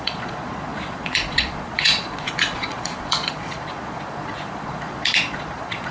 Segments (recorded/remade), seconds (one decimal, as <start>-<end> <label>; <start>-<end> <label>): 0.0-5.9 remade